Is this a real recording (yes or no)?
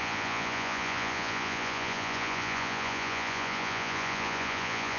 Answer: no